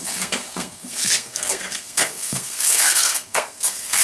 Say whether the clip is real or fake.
fake